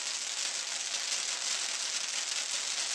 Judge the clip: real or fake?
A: real